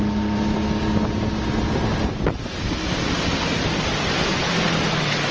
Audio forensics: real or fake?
real